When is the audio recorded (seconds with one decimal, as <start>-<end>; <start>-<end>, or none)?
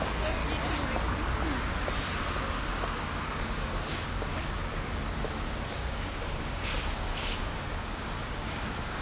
0.4-2.7; 5.0-5.7; 6.7-7.4